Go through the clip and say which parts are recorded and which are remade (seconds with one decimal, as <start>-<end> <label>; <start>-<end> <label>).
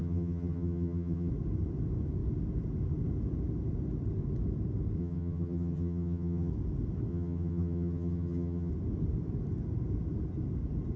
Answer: 0.0-1.3 remade; 1.3-5.0 recorded; 5.0-6.5 remade; 6.5-7.1 recorded; 7.1-8.7 remade; 8.7-11.0 recorded